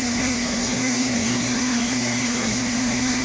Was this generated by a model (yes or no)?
yes